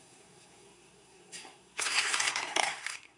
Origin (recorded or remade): remade